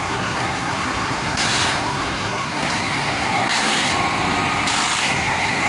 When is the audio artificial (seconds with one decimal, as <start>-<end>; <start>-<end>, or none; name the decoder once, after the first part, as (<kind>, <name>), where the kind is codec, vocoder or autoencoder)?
0.0-3.9 (codec, SNAC); 5.0-5.7